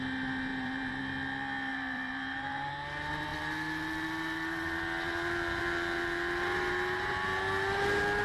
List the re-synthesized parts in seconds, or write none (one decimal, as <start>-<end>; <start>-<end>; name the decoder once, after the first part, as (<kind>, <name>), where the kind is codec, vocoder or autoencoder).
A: 0.5-1.0 (vocoder, BigVGAN v2); 1.7-2.7

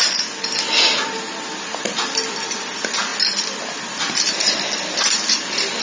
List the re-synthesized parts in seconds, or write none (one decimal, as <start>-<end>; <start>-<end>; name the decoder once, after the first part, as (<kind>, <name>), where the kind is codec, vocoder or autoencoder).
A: none

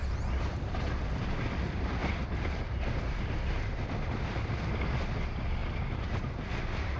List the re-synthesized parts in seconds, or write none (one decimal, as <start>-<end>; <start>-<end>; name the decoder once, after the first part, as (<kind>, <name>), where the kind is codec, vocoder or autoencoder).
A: 2.0-4.3 (vocoder, BigVGAN v2)

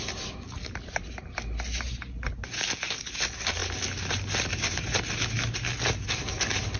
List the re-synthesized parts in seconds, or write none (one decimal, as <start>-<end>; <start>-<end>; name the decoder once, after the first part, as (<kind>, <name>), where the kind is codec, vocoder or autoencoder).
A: none

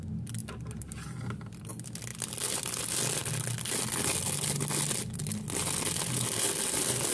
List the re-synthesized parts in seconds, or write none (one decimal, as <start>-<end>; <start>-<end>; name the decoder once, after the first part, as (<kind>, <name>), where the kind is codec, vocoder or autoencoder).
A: 0.4-1.7 (vocoder, BigVGAN v2); 2.1-2.8